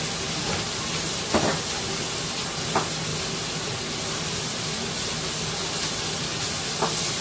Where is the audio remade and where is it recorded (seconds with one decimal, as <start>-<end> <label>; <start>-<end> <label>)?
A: 0.0-7.2 recorded